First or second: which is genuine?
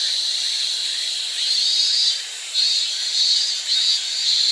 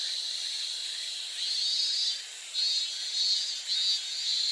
second